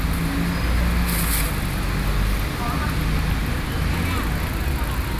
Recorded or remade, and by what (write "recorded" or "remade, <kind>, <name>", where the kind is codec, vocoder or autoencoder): recorded